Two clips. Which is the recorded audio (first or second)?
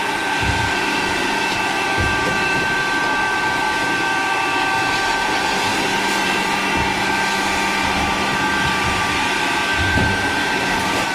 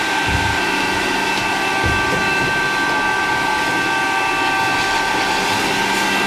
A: second